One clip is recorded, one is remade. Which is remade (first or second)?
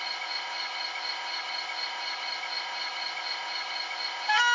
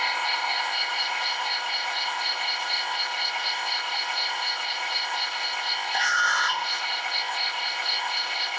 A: second